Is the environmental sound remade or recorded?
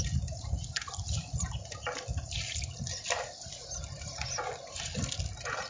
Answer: recorded